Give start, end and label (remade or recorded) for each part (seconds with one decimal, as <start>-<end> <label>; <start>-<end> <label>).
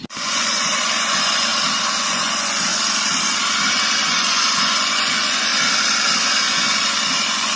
0.0-1.5 remade; 1.5-2.0 recorded; 2.0-2.7 remade; 2.7-3.8 recorded; 3.8-5.5 remade; 5.5-6.4 recorded; 6.4-7.6 remade